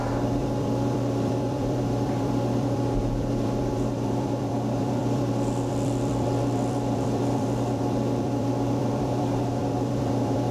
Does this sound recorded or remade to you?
remade